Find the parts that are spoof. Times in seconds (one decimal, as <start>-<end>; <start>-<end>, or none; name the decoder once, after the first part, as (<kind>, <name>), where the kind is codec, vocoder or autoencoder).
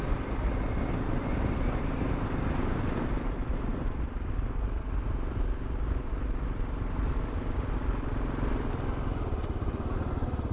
none